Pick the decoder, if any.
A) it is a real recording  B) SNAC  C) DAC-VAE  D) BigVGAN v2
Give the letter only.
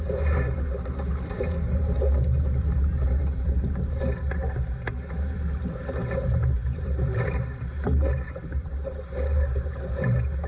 D